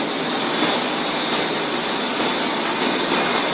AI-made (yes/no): no